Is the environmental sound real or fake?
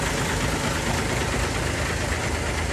real